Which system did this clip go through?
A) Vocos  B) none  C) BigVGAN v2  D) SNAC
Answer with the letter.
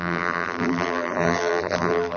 C